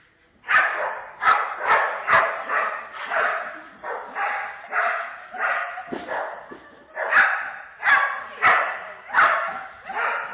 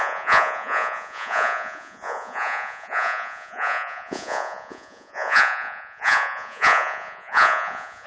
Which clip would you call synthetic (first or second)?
second